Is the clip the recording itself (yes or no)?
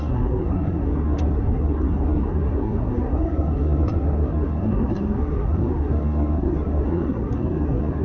no